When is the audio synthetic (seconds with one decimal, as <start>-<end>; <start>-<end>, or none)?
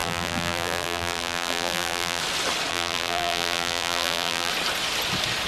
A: 0.0-2.2; 2.7-4.5